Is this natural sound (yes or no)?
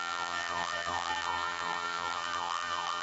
no